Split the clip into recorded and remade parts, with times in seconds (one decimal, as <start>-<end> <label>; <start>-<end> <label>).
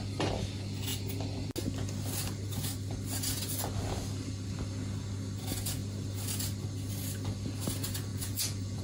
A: 0.0-8.1 recorded; 8.1-8.8 remade